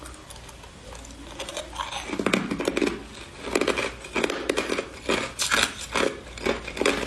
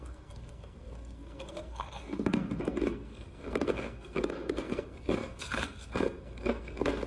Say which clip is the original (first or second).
first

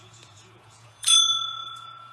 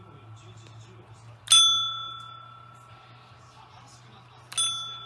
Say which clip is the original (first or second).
second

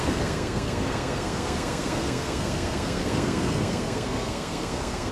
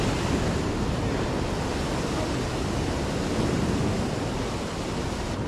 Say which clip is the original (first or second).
second